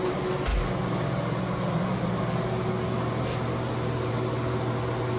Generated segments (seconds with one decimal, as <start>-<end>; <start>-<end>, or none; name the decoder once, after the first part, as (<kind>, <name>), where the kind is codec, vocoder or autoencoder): none